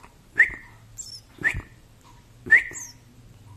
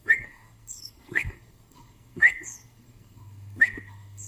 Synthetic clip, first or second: second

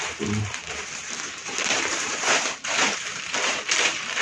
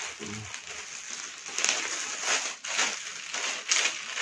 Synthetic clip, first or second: first